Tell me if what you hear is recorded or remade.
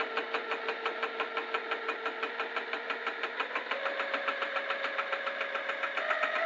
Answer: recorded